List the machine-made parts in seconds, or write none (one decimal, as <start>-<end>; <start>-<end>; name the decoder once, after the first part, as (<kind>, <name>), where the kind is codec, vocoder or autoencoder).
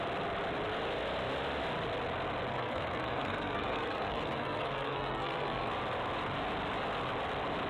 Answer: 2.5-5.7 (codec, SNAC)